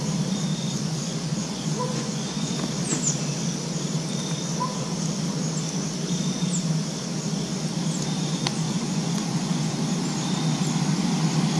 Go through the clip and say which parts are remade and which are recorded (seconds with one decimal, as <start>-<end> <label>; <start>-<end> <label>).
0.0-0.5 recorded; 0.5-2.5 remade; 2.5-8.3 recorded; 8.3-9.7 remade; 9.7-11.6 recorded